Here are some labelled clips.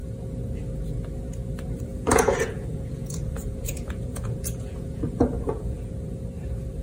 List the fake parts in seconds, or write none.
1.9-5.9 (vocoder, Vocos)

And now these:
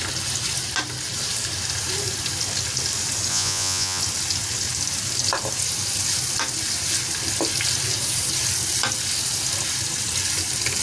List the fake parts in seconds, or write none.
3.3-4.0 (vocoder, Vocos)